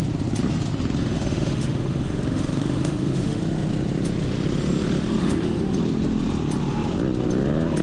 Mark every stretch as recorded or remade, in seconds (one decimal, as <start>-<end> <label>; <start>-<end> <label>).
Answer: 0.0-1.0 recorded; 1.0-3.4 remade; 3.4-5.2 recorded; 5.2-5.7 remade; 5.7-7.8 recorded